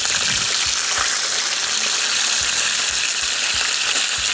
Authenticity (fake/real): real